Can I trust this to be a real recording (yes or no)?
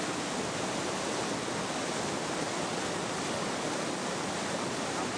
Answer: yes